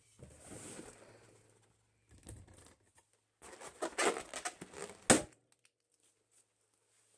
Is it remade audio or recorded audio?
recorded